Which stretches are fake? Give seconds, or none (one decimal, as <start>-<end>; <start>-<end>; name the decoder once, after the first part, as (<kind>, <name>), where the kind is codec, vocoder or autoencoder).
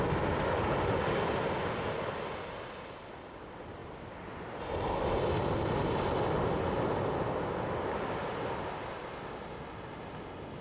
none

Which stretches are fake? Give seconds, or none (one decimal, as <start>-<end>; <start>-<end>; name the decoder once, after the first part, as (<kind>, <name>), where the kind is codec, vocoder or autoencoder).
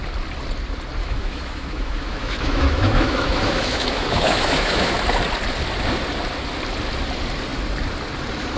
1.0-5.0 (autoencoder, DAC-VAE)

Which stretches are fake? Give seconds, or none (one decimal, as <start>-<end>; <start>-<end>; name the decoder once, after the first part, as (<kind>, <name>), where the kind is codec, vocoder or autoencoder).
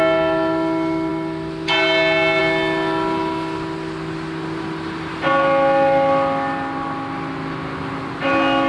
none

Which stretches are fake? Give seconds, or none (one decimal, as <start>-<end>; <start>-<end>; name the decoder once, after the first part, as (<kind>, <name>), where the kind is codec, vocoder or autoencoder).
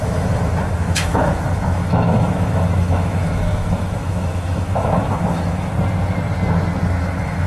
0.0-5.7 (autoencoder, DAC-VAE); 7.0-7.5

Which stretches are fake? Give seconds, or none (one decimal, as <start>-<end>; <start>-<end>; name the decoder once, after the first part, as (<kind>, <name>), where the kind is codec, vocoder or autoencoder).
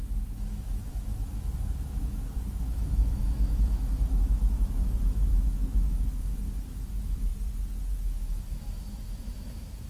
0.0-7.3 (autoencoder, DAC-VAE); 7.9-9.9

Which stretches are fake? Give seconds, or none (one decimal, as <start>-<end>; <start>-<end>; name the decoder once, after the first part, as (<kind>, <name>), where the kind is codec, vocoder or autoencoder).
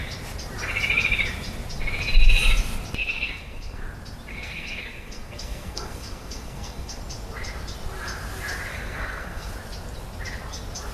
3.0-3.8 (codec, SNAC); 4.3-7.0; 8.7-9.5